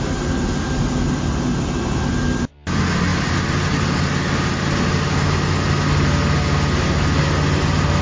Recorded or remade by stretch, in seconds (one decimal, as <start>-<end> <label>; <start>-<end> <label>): 0.0-8.0 recorded